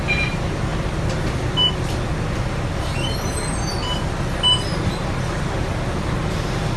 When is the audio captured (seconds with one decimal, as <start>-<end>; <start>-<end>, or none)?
0.0-0.7; 1.7-6.8